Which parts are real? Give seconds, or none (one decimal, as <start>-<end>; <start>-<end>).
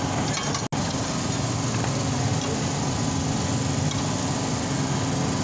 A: 0.0-5.4